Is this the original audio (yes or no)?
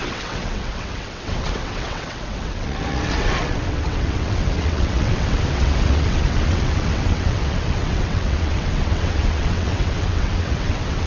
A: no